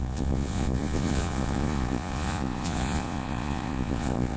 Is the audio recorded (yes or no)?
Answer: no